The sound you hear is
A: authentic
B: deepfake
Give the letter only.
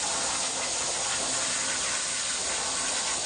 A